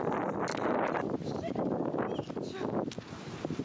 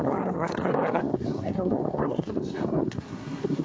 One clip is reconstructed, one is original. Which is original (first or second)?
first